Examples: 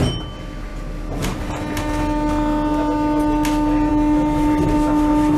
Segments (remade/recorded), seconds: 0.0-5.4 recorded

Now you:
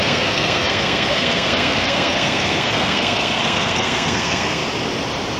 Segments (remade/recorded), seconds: 0.0-4.6 remade; 4.6-5.4 recorded